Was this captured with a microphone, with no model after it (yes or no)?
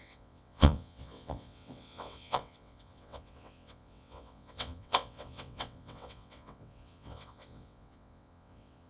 no